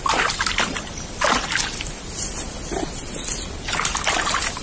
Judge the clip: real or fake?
real